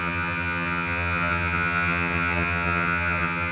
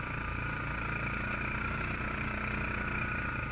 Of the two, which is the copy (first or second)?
first